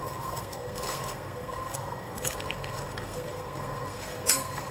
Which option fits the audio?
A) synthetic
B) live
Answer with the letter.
A